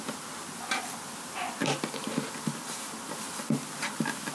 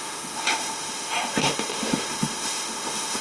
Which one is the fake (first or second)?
second